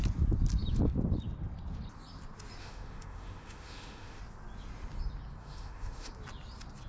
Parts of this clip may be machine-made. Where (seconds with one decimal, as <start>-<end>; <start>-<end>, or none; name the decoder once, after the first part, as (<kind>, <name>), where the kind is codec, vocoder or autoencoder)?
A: 2.6-4.2 (autoencoder, DAC-VAE); 5.4-6.1